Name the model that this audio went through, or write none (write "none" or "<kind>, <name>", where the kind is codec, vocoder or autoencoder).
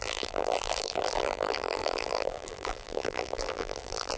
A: vocoder, BigVGAN v2